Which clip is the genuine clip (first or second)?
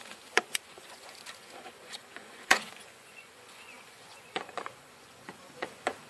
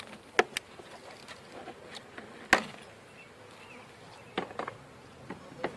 second